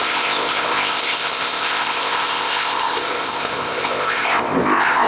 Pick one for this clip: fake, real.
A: fake